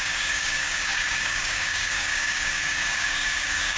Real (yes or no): no